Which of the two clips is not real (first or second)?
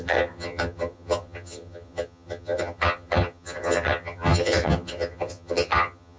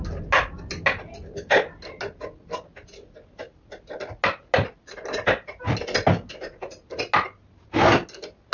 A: first